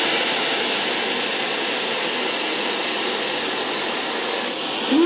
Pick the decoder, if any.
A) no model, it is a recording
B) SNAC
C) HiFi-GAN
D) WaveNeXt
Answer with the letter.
A